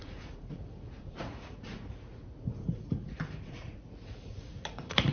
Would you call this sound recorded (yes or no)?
no